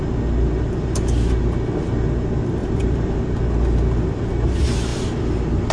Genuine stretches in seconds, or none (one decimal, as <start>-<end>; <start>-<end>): 0.0-2.6; 3.2-5.7